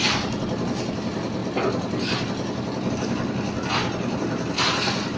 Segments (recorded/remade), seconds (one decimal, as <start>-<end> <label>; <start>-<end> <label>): 0.0-5.2 recorded